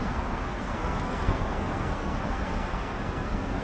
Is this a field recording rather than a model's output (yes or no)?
no